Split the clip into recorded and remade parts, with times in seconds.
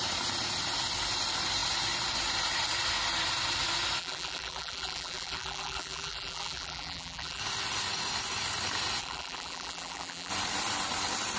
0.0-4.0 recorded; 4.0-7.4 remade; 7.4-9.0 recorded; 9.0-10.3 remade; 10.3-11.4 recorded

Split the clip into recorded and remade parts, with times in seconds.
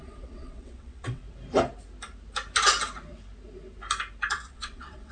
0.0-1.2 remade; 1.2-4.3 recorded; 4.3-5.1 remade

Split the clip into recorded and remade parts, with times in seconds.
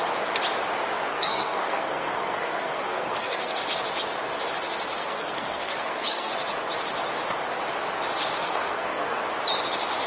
0.0-1.1 recorded; 1.1-3.6 remade; 3.6-5.0 recorded; 5.0-6.3 remade; 6.3-8.4 recorded; 8.4-9.2 remade; 9.2-10.1 recorded